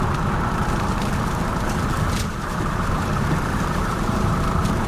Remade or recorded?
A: remade